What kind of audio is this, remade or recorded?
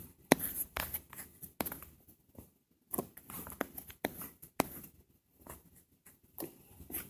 recorded